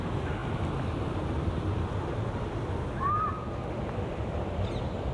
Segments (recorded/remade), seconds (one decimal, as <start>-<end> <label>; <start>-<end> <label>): 0.0-5.1 recorded